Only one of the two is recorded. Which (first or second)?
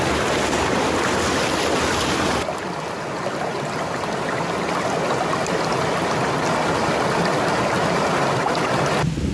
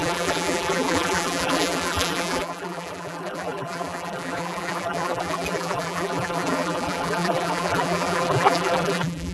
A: first